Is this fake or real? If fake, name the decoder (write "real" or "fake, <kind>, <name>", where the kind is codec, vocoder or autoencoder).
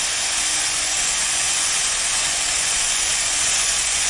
fake, vocoder, Vocos